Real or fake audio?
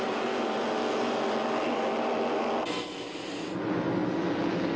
real